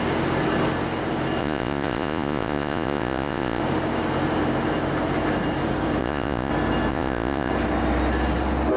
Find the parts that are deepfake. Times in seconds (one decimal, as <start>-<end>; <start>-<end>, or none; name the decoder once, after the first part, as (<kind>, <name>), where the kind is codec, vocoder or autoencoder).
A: 1.4-3.6 (vocoder, Vocos); 6.0-6.5; 6.9-7.5